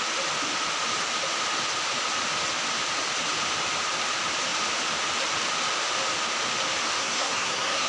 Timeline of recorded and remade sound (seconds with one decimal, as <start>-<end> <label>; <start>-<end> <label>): 0.0-7.0 recorded; 7.0-7.9 remade